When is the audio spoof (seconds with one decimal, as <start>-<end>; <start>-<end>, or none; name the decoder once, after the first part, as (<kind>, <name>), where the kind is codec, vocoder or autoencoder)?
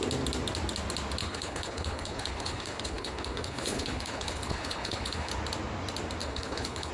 1.2-5.3 (codec, HILCodec); 6.2-6.9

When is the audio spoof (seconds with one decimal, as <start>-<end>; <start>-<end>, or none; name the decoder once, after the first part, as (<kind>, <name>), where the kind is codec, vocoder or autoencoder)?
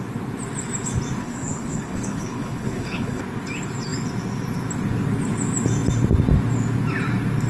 1.2-3.2 (codec, HILCodec)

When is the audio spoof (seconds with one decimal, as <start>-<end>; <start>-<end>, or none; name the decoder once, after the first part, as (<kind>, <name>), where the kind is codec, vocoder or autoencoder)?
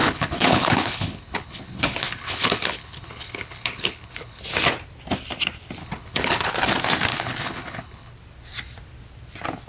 0.0-4.4 (codec, HILCodec); 5.8-6.5; 7.1-8.1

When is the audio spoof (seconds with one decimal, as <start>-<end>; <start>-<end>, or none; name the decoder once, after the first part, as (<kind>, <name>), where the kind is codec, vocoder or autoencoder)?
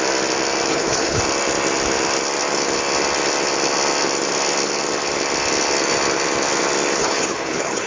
0.7-1.2 (codec, HILCodec); 7.0-7.9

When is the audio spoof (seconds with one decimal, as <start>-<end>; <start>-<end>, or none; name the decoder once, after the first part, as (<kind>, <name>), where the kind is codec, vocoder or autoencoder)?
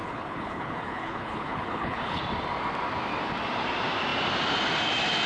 0.0-2.2 (codec, HILCodec)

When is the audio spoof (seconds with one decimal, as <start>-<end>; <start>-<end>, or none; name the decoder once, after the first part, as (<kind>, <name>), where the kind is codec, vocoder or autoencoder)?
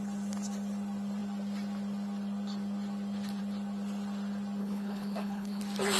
4.6-5.6 (codec, HILCodec)